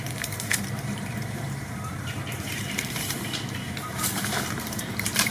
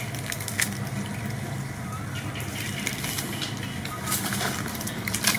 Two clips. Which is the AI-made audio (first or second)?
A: first